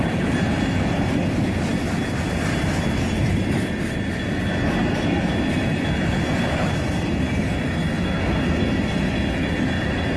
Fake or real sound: real